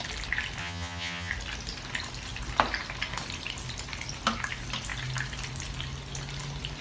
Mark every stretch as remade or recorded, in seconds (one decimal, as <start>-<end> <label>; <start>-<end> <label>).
0.0-0.6 recorded; 0.6-1.3 remade; 1.3-6.8 recorded